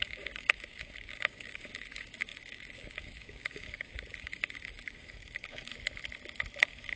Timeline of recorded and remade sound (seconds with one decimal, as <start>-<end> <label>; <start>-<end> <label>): 0.0-5.7 remade; 5.7-6.6 recorded; 6.6-7.0 remade